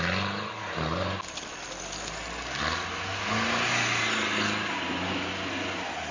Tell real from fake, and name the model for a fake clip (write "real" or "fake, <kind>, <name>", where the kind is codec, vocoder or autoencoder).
real